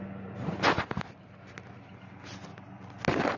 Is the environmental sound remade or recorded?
recorded